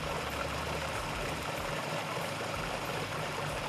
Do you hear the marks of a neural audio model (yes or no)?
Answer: yes